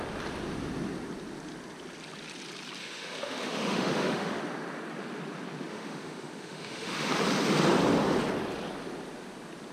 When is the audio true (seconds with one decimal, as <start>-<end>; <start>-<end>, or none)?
0.0-2.8; 4.4-5.7; 7.1-9.7